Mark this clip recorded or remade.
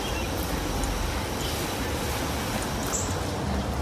recorded